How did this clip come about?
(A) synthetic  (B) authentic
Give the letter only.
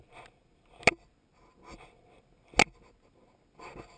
B